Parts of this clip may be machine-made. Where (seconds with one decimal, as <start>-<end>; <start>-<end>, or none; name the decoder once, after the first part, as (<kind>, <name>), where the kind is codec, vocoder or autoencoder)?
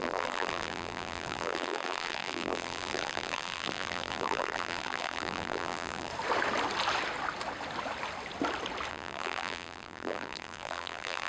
0.0-6.1 (vocoder, BigVGAN v2); 8.9-11.3